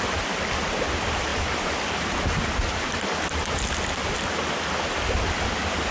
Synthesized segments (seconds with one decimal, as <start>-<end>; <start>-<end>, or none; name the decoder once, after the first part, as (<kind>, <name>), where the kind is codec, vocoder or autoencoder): none